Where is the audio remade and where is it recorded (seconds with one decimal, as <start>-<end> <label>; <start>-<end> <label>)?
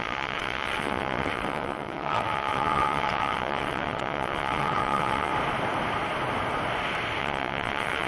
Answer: 0.0-5.3 remade; 5.3-7.2 recorded; 7.2-8.1 remade